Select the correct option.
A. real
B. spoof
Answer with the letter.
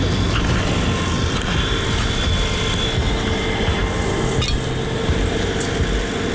A